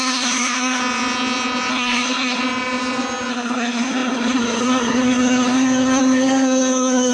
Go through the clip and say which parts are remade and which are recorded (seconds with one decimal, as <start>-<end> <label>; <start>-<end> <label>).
0.0-0.8 remade; 0.8-1.7 recorded; 1.7-2.4 remade; 2.4-3.3 recorded; 3.3-7.1 remade